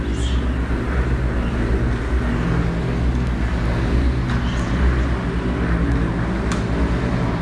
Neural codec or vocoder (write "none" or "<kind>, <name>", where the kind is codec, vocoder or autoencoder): none